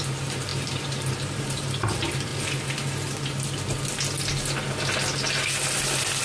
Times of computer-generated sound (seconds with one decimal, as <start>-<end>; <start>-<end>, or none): 0.0-2.3